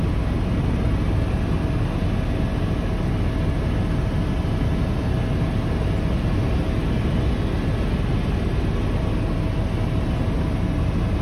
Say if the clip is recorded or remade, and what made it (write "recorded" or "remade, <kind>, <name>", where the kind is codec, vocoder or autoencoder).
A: recorded